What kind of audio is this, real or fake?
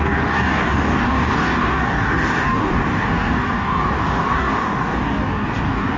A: fake